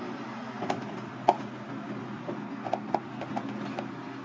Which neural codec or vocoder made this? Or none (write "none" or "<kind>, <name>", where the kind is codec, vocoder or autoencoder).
none